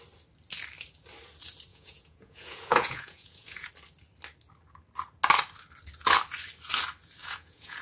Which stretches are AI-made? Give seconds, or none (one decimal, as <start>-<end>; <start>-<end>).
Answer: 1.7-3.7; 7.2-7.8

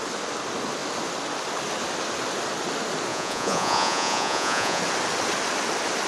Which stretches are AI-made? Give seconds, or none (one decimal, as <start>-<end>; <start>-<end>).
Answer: 3.1-4.8

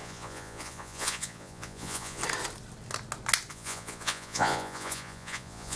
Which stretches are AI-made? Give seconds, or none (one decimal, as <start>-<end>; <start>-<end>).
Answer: 0.0-2.2; 3.5-5.8

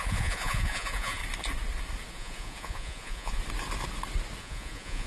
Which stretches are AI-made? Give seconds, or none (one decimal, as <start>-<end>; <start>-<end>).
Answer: 0.0-1.2; 2.1-3.4; 4.4-5.1